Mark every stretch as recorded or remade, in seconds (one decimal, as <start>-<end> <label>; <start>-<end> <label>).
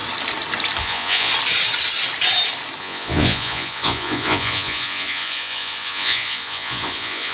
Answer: 0.0-0.8 recorded; 0.8-1.3 remade; 1.3-2.8 recorded; 2.8-7.3 remade